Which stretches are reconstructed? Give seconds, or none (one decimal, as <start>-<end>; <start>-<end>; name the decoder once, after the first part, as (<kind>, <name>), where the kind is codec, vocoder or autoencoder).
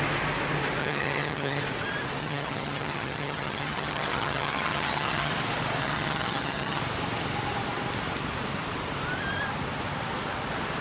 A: 0.8-1.6 (vocoder, HiFi-GAN); 2.2-5.3; 5.8-6.8